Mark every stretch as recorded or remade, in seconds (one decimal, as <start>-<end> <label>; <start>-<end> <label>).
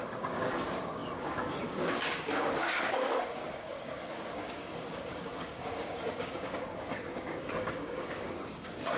0.0-9.0 remade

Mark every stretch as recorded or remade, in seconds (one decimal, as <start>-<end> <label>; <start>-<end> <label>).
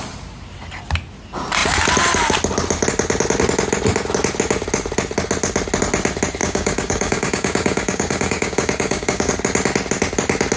0.0-6.4 recorded; 6.4-9.3 remade; 9.3-10.6 recorded